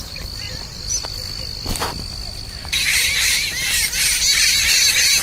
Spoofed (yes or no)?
no